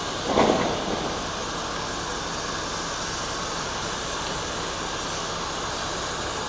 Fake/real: real